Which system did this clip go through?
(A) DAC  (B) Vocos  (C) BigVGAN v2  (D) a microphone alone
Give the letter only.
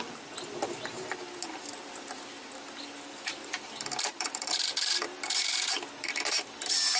C